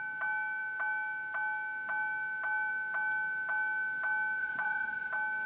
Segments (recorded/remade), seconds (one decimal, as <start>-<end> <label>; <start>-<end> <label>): 0.0-4.4 recorded; 4.4-5.1 remade; 5.1-5.5 recorded